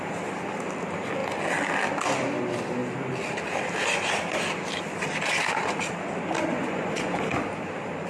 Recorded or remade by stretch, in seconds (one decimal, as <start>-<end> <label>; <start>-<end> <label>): 0.0-6.5 recorded; 6.5-7.3 remade; 7.3-8.1 recorded

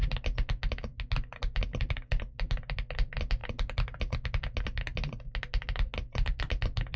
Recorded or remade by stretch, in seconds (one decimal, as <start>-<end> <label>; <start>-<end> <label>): 0.0-7.0 recorded